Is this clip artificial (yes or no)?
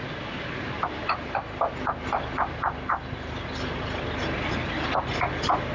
no